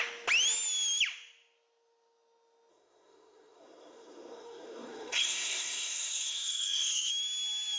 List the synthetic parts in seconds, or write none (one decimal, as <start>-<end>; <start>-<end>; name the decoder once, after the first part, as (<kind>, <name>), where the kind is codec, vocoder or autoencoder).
2.7-7.1 (codec, SNAC)